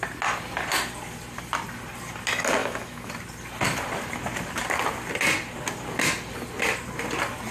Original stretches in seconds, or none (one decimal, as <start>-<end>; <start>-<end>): 0.0-2.6; 3.1-7.5